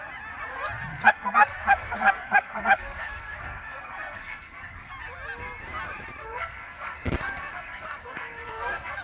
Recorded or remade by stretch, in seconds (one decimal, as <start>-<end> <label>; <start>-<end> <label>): 0.0-0.9 recorded; 0.9-4.9 remade; 4.9-6.2 recorded; 6.2-9.0 remade